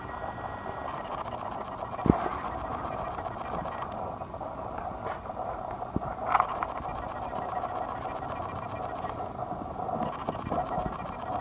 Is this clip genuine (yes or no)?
yes